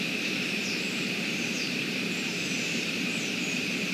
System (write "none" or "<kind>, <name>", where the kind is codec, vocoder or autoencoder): vocoder, BigVGAN v2